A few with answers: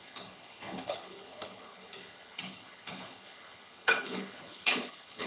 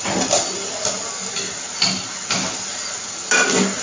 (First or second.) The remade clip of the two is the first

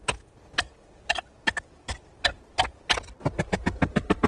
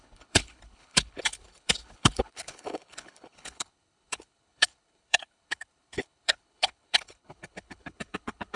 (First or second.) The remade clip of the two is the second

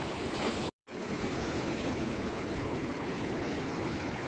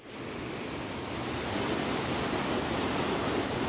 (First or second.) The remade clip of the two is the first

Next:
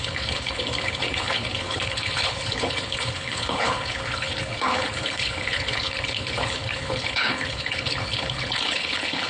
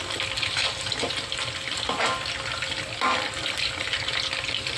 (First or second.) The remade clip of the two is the first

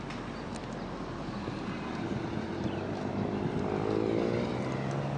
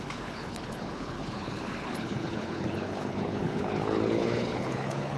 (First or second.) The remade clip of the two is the second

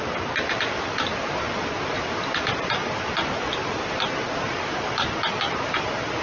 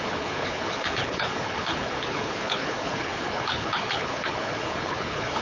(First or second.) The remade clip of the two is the second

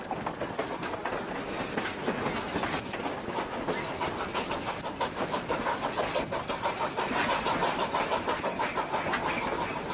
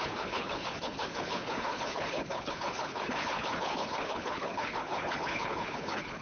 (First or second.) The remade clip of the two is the second